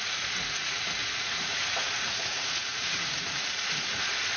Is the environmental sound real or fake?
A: fake